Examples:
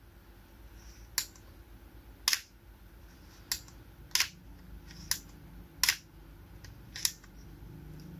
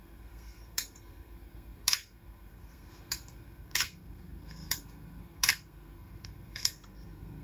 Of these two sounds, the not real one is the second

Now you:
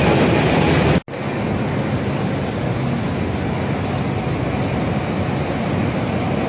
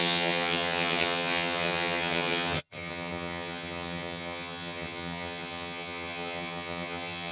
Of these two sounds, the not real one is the second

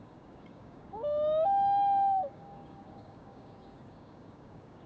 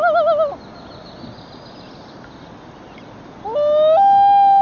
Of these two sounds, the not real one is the first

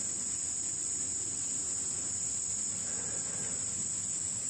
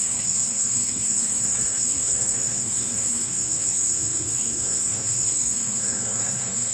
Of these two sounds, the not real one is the second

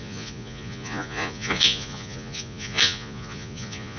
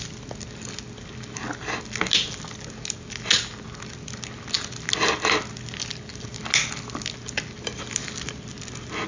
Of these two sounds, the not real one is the first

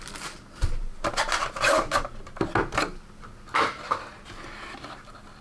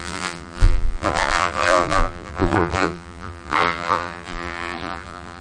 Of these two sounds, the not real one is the second